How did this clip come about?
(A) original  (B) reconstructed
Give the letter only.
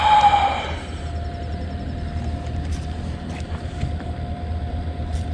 A